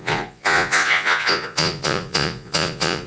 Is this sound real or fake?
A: fake